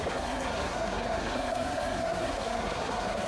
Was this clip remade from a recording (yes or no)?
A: yes